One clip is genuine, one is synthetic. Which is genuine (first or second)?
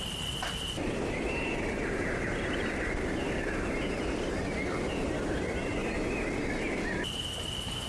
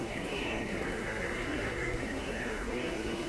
first